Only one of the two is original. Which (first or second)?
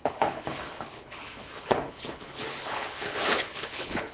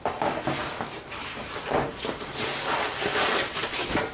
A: second